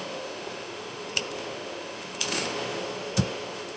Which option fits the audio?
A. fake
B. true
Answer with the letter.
A